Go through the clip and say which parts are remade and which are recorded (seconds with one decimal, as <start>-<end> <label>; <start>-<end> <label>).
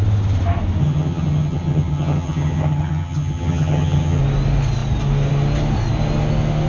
0.0-0.8 recorded; 0.8-4.2 remade; 4.2-6.7 recorded